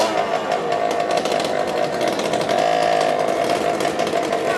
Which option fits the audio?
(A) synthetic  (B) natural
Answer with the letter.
B